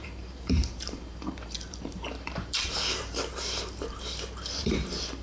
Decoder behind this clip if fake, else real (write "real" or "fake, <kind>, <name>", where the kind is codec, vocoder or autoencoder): fake, vocoder, BigVGAN v2